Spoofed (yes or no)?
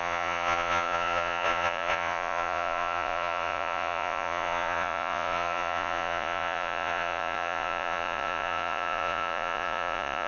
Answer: yes